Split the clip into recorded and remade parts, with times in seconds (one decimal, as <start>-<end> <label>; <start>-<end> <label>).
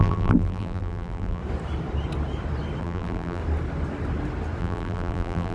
0.0-1.4 remade; 1.4-2.8 recorded; 2.8-3.4 remade; 3.4-4.6 recorded; 4.6-5.5 remade